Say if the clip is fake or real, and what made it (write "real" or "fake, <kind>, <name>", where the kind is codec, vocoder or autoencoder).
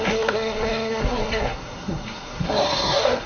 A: fake, codec, SNAC